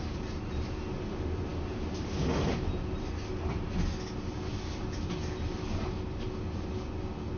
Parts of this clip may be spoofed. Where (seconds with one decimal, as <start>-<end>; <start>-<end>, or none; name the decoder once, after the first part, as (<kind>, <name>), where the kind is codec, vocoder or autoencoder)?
none